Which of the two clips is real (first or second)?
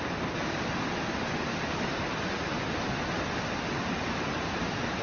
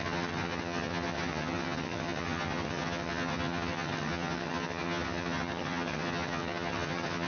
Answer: first